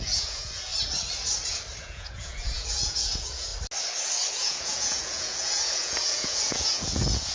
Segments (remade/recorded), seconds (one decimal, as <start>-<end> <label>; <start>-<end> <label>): 0.0-0.7 remade; 0.7-1.8 recorded; 1.8-3.5 remade; 3.5-4.3 recorded; 4.3-7.3 remade